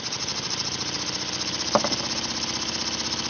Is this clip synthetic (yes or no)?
no